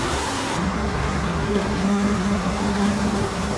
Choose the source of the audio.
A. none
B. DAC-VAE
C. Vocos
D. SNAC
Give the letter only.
D